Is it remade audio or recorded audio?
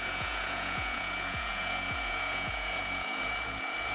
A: remade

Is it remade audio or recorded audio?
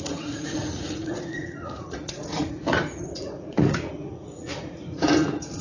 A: remade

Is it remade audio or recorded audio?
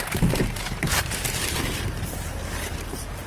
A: remade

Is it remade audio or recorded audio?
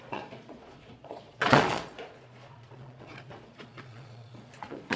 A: remade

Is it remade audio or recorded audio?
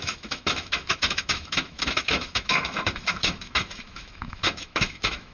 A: remade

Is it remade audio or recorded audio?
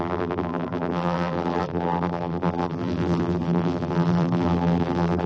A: remade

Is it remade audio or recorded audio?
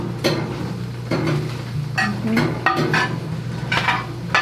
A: recorded